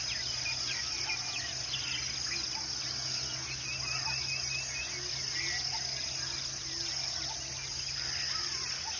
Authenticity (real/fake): real